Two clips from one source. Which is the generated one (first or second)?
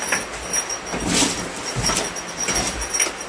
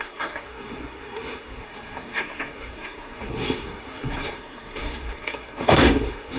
second